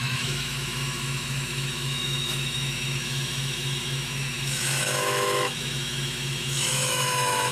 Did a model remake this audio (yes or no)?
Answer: yes